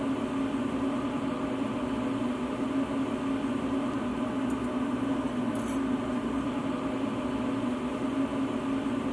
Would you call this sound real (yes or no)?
yes